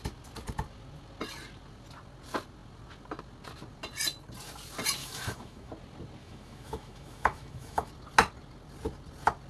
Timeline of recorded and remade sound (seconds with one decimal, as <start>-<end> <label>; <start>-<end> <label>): 0.0-5.0 recorded; 5.0-5.7 remade; 5.7-6.2 recorded; 6.2-7.9 remade; 7.9-9.5 recorded